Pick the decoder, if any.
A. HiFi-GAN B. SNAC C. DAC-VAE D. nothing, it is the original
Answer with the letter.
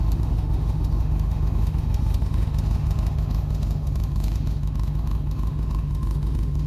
C